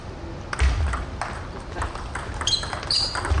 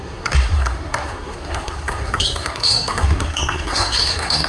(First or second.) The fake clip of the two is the second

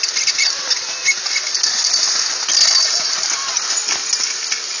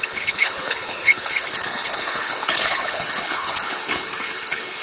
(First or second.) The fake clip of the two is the second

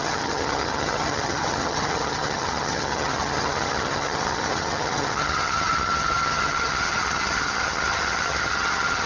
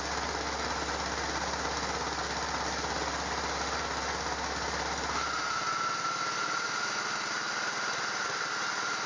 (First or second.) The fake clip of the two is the first